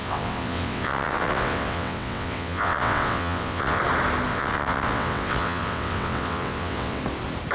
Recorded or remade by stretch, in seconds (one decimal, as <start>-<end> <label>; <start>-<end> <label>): 0.0-3.8 remade; 3.8-4.3 recorded; 4.3-7.0 remade; 7.0-7.5 recorded